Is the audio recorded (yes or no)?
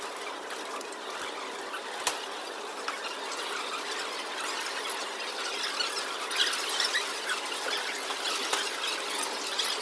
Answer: yes